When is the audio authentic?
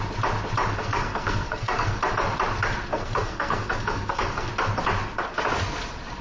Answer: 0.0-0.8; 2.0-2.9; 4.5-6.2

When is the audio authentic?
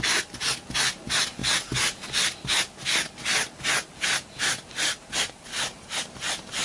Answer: 0.0-6.6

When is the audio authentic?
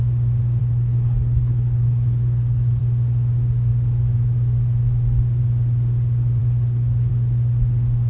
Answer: 0.0-0.6; 2.8-6.4; 7.1-8.1